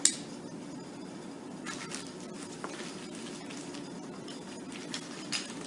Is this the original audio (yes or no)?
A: yes